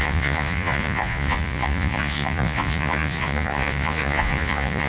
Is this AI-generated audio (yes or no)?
yes